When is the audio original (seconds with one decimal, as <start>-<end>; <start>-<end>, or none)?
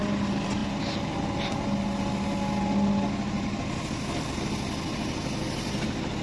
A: 0.0-6.2